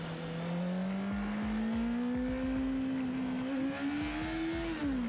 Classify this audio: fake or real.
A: real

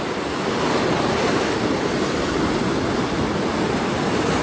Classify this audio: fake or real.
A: real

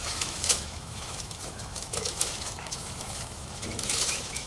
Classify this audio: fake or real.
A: fake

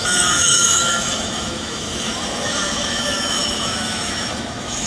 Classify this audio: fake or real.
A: fake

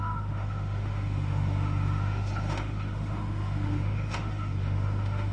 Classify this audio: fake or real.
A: fake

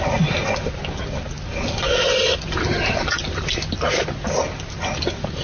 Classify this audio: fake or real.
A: real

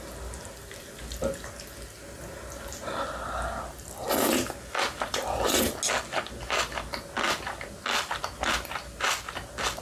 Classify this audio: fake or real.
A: real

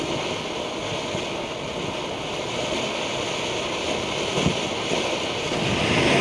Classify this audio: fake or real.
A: real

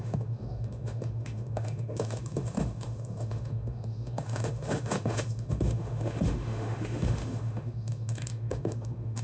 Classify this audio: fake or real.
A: fake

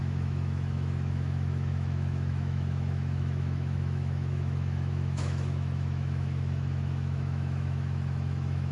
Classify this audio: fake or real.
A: fake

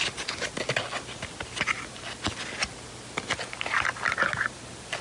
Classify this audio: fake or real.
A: real